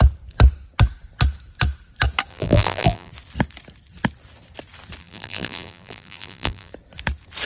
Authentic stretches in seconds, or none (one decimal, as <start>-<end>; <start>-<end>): 0.0-2.3; 3.1-5.0; 6.7-7.5